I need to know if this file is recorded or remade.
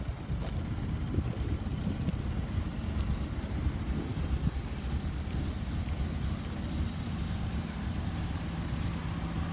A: recorded